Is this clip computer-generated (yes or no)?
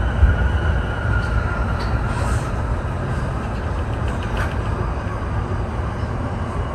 no